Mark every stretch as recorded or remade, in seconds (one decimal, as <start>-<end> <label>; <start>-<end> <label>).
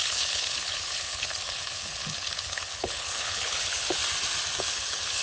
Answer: 0.0-4.0 remade; 4.0-4.6 recorded; 4.6-5.2 remade